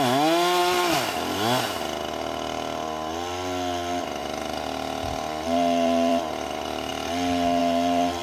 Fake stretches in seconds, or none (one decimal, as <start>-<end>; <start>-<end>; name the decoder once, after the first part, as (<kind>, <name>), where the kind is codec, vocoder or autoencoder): none